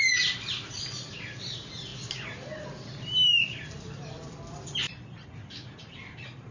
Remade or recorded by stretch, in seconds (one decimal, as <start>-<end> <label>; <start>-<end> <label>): 0.0-1.9 remade; 1.9-5.8 recorded; 5.8-6.5 remade